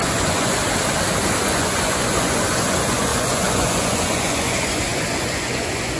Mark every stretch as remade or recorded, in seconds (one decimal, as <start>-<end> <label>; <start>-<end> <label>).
0.0-0.6 remade; 0.6-1.4 recorded; 1.4-6.0 remade